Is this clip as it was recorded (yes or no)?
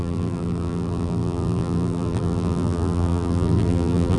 no